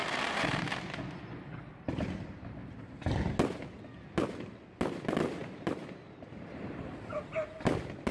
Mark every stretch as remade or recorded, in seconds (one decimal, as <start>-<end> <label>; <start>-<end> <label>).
0.0-0.6 remade; 0.6-5.4 recorded; 5.4-7.3 remade; 7.3-8.1 recorded